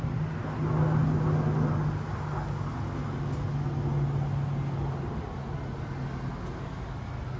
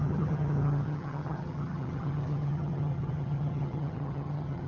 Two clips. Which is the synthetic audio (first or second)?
second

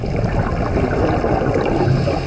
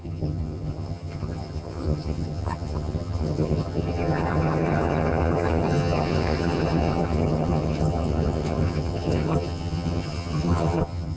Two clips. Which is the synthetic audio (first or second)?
second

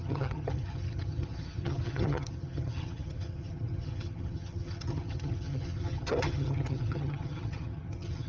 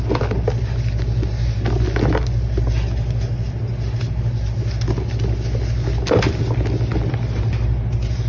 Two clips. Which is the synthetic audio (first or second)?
first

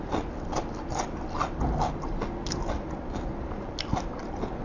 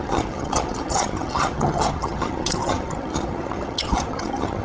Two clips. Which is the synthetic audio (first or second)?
second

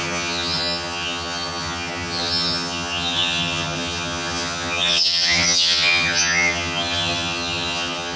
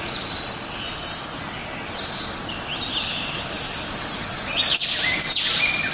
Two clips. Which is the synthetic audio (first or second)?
first